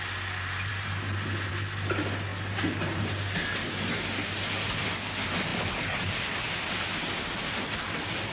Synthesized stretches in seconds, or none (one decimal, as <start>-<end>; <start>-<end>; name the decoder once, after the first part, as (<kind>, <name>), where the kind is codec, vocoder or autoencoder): none